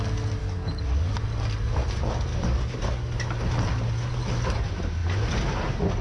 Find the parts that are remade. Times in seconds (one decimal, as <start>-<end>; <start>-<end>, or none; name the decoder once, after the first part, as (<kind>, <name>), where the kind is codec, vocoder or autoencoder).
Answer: 0.4-1.1 (codec, DAC); 2.3-2.8